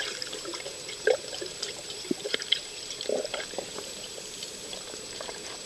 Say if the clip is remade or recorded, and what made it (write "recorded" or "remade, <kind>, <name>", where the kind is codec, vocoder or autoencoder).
remade, vocoder, BigVGAN v2